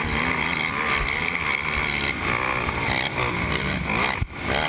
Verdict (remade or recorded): recorded